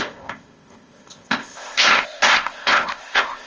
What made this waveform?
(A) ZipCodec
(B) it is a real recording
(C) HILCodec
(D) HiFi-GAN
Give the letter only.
A